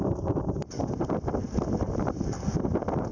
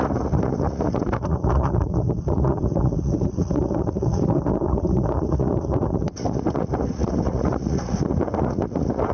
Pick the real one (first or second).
first